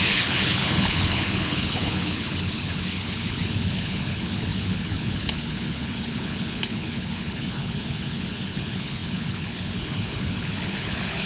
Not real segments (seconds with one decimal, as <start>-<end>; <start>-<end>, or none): 0.0-11.3